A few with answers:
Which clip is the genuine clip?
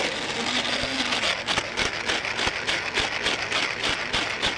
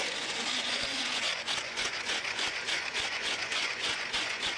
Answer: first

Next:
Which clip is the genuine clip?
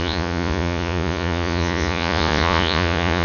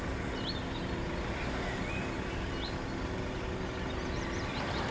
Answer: second